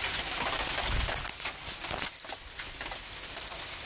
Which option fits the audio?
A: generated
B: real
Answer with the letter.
B